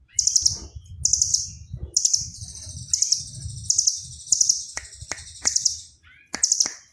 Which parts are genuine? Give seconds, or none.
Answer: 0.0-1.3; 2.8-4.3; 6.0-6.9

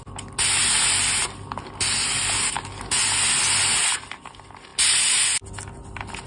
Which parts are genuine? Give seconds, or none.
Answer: 0.0-6.3